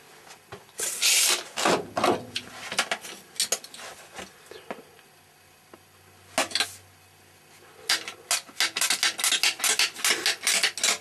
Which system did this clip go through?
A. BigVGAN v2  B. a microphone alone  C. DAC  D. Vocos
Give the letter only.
B